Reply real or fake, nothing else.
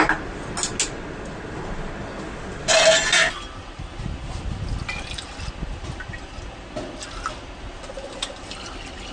real